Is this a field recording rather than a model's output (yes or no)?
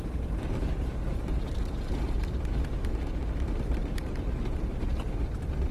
no